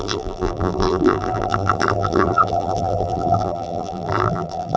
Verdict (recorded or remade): remade